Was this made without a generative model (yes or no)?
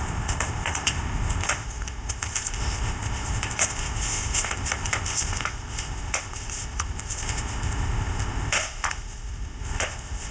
no